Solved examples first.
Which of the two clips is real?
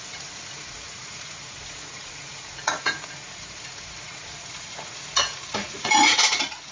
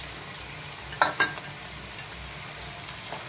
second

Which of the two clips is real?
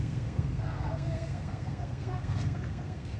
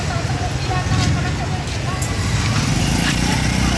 second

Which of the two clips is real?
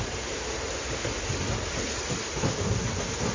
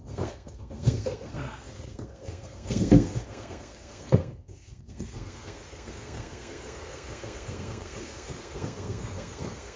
first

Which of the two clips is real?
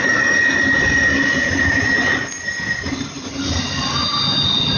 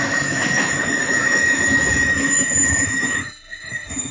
first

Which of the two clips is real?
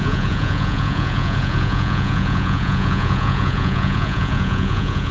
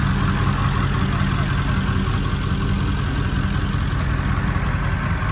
second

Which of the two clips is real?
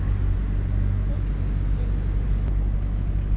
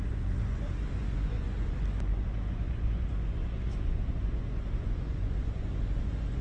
first